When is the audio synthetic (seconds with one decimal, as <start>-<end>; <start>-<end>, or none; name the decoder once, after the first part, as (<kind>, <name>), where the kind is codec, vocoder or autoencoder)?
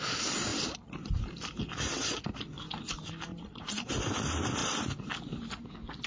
0.5-1.6 (vocoder, BigVGAN v2); 3.3-3.9; 4.6-5.1